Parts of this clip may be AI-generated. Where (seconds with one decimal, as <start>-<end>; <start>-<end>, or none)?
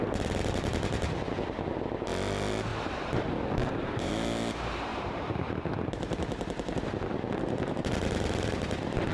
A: 2.7-4.1; 4.9-5.7